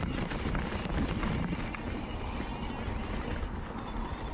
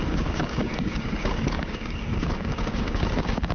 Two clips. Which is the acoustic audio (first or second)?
first